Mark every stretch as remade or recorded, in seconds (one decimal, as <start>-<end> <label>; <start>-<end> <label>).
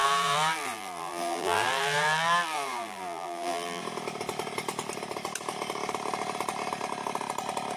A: 0.0-3.8 remade; 3.8-7.8 recorded